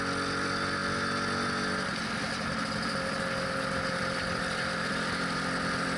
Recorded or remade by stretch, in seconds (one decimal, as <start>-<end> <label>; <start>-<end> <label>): 0.0-6.0 recorded